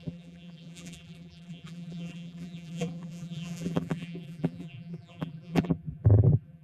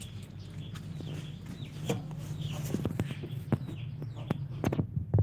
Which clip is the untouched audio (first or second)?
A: second